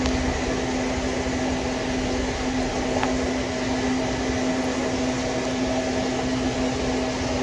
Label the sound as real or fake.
real